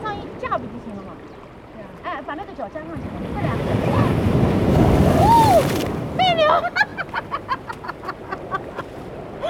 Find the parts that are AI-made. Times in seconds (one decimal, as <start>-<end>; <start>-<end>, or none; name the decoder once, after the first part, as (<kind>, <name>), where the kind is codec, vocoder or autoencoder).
3.2-6.1 (vocoder, BigVGAN v2)